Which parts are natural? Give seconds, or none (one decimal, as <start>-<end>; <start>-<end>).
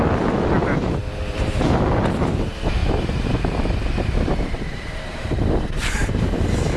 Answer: 0.0-0.6; 1.6-2.8; 6.3-6.8